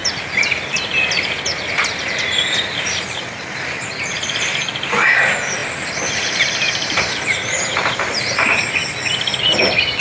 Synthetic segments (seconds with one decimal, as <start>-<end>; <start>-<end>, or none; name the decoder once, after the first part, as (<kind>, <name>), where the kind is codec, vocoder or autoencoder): 2.0-8.8 (vocoder, BigVGAN v2); 9.4-10.0